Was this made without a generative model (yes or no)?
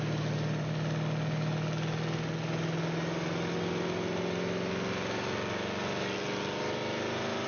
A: yes